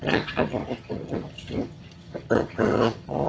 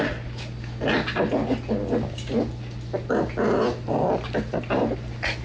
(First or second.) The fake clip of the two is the first